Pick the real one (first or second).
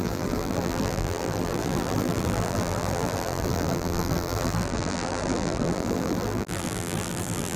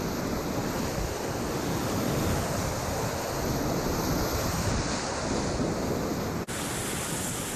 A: second